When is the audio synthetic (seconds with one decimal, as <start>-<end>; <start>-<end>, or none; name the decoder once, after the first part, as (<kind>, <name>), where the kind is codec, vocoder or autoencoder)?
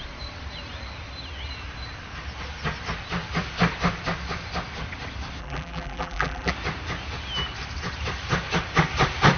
5.4-6.5 (vocoder, BigVGAN v2)